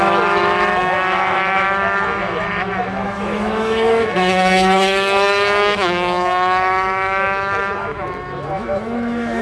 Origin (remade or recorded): remade